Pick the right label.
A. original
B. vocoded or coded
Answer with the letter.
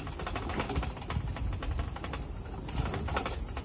A